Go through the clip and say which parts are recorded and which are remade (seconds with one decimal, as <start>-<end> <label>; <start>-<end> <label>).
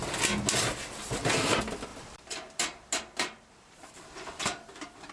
0.0-1.9 recorded; 1.9-5.1 remade